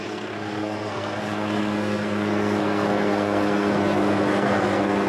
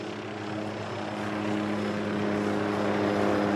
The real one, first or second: second